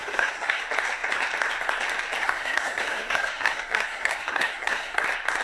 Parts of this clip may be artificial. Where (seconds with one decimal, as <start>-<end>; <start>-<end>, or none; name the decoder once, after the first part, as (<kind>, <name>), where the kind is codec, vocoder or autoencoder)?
0.0-0.6 (codec, SNAC); 2.2-5.0